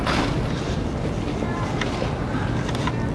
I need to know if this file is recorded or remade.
recorded